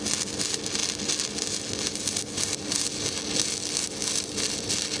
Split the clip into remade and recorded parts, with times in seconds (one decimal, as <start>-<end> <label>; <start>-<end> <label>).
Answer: 0.0-5.0 recorded